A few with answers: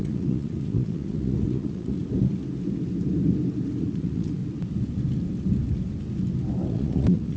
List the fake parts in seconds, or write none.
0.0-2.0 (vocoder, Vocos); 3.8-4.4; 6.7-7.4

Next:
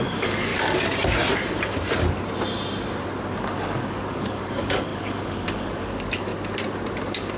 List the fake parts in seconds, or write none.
0.0-0.5 (codec, DAC); 3.4-6.3; 7.0-7.4

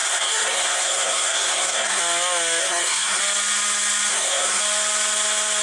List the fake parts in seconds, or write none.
0.0-2.0 (codec, SNAC); 2.6-3.2; 4.1-4.6

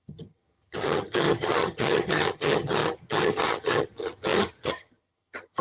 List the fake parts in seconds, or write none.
0.0-5.6 (vocoder, HiFi-GAN)

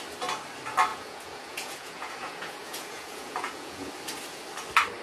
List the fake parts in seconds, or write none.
0.9-3.9 (vocoder, Vocos)